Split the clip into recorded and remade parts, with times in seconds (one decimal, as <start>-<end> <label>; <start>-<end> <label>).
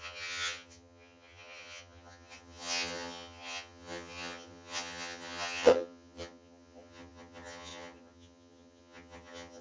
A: 0.0-9.6 remade